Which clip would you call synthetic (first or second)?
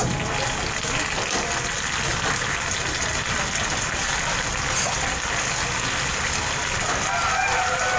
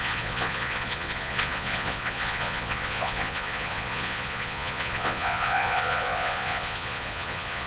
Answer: second